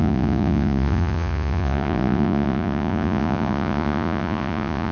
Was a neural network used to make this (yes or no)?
yes